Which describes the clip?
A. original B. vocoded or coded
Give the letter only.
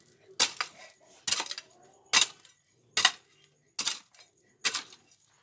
A